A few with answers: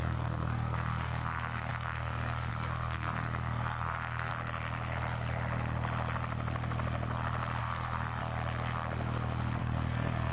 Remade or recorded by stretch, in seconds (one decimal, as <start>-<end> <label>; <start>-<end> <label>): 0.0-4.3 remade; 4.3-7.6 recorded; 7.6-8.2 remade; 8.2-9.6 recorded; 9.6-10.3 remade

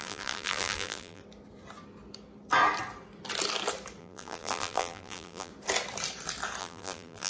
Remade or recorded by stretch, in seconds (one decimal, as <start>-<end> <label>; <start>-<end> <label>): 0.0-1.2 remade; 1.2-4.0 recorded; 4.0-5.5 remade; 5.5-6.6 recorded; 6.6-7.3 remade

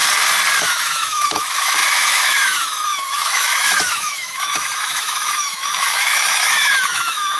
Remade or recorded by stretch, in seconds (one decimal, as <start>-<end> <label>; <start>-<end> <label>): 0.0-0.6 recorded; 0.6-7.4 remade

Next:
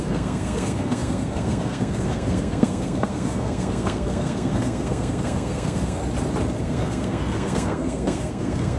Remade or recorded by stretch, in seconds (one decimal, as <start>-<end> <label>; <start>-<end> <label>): 0.0-6.0 remade; 6.0-6.6 recorded; 6.6-8.8 remade

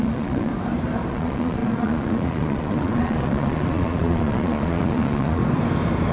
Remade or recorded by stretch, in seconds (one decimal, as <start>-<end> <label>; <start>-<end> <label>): 0.0-0.5 remade; 0.5-1.1 recorded; 1.1-5.4 remade; 5.4-6.1 recorded